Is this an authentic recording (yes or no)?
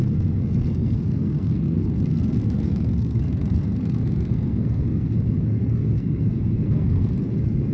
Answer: no